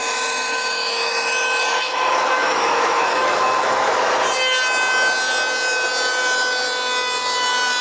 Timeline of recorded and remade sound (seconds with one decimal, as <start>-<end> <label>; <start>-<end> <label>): 0.0-4.0 remade; 4.0-7.8 recorded